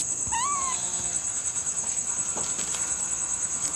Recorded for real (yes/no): yes